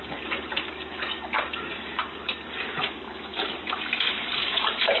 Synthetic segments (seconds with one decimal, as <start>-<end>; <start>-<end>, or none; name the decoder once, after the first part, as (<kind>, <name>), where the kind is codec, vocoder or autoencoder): 0.0-5.0 (vocoder, BigVGAN v2)